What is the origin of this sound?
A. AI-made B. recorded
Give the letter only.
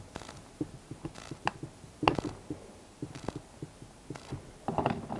B